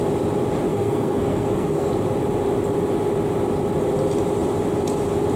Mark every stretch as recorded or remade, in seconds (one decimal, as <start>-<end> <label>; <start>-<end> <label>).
0.0-0.7 recorded; 0.7-1.9 remade; 1.9-5.4 recorded